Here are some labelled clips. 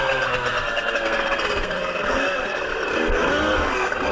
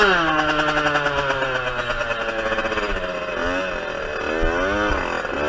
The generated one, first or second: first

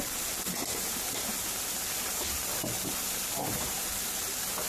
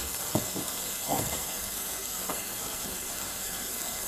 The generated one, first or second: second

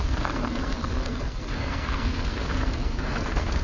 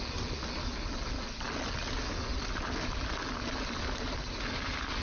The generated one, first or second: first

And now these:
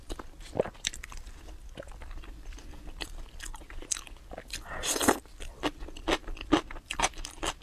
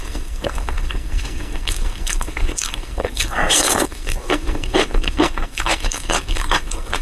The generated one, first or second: second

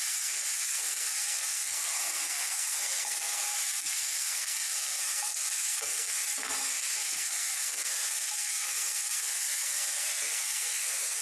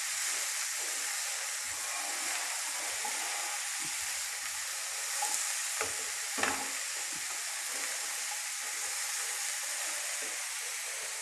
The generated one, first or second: first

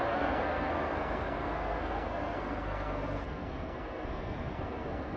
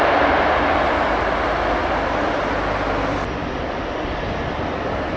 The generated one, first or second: first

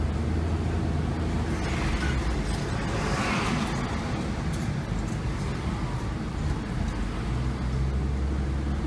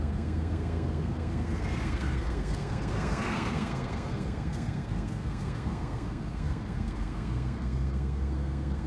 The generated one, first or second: second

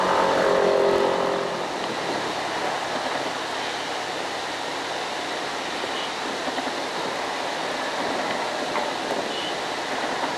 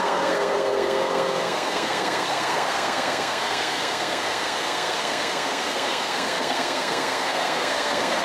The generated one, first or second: second